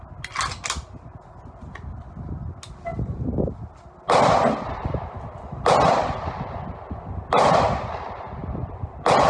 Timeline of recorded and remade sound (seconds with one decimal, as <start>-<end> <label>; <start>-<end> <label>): 0.0-9.3 recorded